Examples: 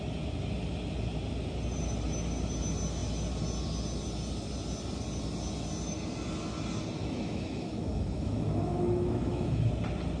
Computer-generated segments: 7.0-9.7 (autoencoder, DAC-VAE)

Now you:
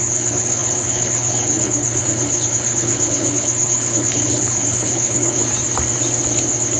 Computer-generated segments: 0.0-5.4 (codec, HILCodec)

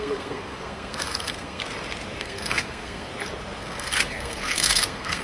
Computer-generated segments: 0.0-1.6 (codec, SNAC); 2.2-3.1; 3.6-5.2

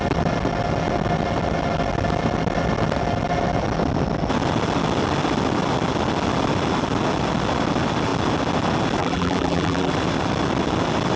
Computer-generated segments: 9.0-9.9 (vocoder, BigVGAN v2)

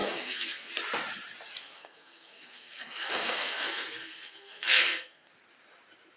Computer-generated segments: 0.0-0.7 (codec, SNAC); 1.6-5.3